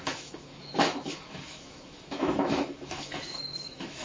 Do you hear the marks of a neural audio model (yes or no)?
yes